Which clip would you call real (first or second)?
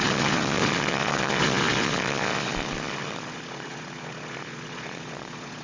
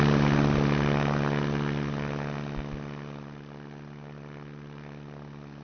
second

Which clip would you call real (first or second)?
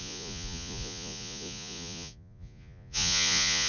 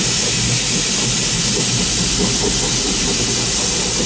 second